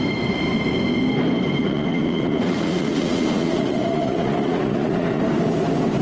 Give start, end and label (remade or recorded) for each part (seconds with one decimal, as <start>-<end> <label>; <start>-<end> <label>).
0.0-1.6 recorded; 1.6-5.2 remade; 5.2-6.0 recorded